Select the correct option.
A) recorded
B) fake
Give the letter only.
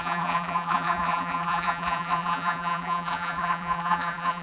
B